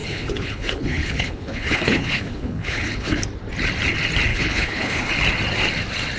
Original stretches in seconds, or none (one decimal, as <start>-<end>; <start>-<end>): 3.2-4.3; 5.1-6.2